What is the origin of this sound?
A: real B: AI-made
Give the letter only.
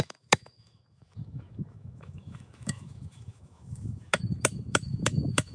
B